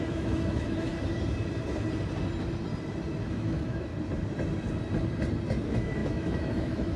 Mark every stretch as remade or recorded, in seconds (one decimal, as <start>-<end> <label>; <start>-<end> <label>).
0.0-0.9 remade; 0.9-3.3 recorded; 3.3-3.9 remade; 3.9-5.6 recorded; 5.6-7.0 remade